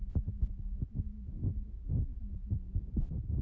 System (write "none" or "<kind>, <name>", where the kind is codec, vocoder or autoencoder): none